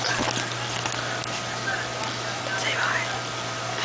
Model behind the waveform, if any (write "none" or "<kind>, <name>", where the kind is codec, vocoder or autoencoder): none